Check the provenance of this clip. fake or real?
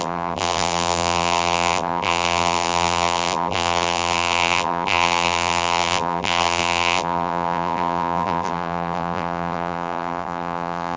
fake